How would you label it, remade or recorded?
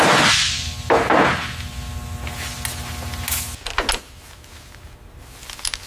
recorded